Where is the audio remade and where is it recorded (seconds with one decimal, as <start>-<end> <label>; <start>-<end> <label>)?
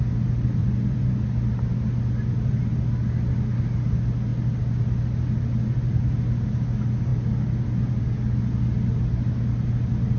0.0-0.6 recorded; 0.6-1.2 remade; 1.2-10.2 recorded